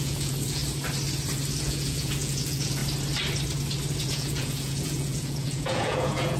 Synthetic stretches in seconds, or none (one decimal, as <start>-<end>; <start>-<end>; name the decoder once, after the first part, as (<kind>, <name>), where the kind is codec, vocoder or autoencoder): 0.0-0.6 (vocoder, Vocos); 1.6-2.8; 4.0-6.4